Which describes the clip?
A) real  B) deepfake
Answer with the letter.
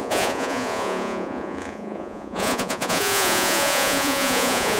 B